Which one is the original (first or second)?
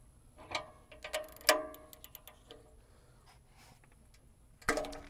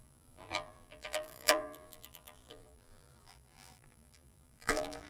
first